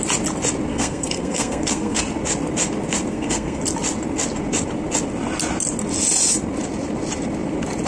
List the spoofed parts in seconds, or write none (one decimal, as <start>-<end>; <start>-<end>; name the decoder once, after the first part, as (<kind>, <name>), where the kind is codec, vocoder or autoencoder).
0.7-2.0 (codec, SNAC); 3.1-3.6